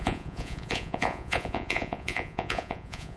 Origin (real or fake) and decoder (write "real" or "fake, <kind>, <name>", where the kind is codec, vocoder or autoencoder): fake, vocoder, Vocos